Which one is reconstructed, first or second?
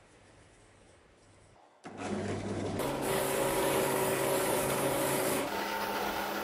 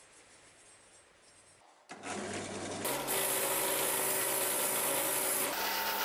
first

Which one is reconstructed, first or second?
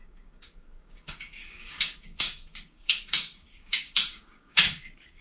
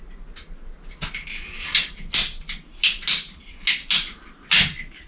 first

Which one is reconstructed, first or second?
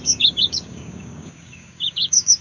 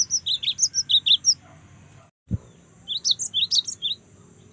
first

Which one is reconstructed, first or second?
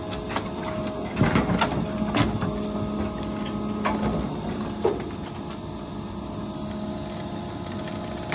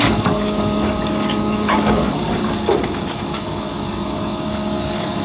second